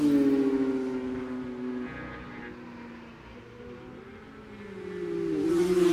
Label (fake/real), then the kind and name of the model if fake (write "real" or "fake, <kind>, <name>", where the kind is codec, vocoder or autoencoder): real